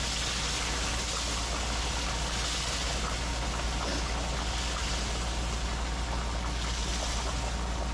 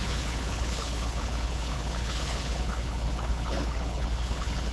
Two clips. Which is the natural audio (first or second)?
first